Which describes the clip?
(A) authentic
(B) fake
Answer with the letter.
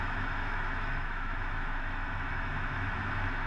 B